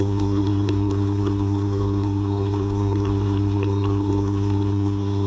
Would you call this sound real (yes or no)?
no